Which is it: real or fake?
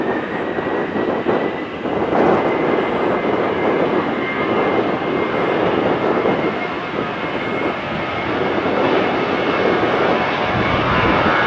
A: real